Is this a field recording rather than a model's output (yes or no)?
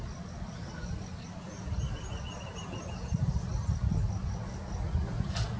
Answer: yes